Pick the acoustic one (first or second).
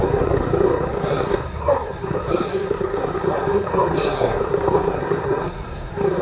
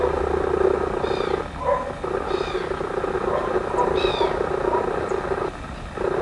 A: second